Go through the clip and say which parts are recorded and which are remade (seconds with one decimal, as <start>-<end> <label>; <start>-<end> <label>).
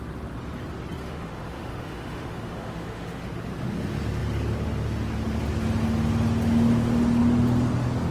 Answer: 0.0-1.0 recorded; 1.0-3.2 remade; 3.2-8.1 recorded